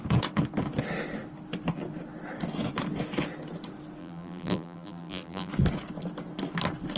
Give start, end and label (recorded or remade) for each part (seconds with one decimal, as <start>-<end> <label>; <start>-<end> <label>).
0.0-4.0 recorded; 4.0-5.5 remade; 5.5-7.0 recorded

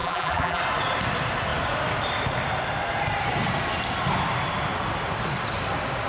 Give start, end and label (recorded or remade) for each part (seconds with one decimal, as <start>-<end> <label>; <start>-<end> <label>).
0.0-0.6 remade; 0.6-6.1 recorded

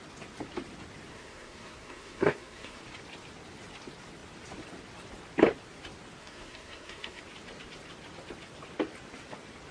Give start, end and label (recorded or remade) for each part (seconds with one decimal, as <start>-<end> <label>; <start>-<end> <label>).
0.0-1.1 recorded; 1.1-2.8 remade; 2.8-6.2 recorded; 6.2-7.2 remade; 7.2-9.7 recorded